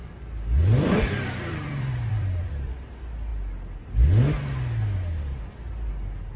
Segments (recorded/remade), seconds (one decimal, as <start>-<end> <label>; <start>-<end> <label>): 0.0-0.6 recorded; 0.6-2.5 remade; 2.5-6.4 recorded